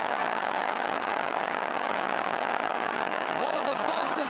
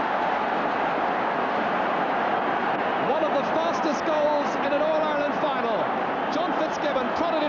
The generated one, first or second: first